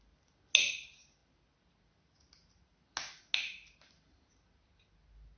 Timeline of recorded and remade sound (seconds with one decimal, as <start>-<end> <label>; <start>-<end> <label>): 0.0-5.4 recorded